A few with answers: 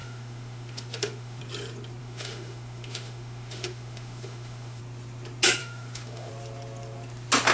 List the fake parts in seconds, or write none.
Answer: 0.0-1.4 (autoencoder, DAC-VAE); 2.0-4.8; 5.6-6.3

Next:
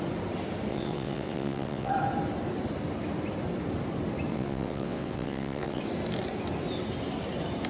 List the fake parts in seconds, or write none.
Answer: 0.7-1.9 (vocoder, WaveNeXt); 4.3-5.8

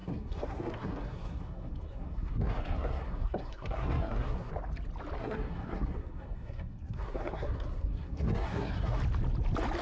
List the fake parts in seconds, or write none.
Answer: 0.0-4.5 (codec, SNAC); 5.2-9.0

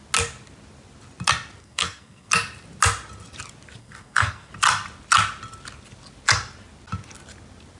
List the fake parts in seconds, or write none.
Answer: 1.6-2.3 (codec, SNAC); 3.8-4.5

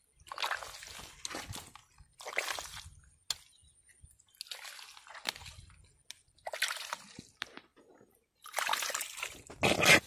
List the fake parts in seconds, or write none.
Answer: none

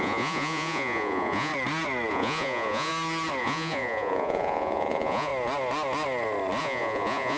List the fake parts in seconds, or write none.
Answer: 0.0-1.5 (vocoder, Vocos); 2.1-2.9; 3.4-5.3; 6.6-7.4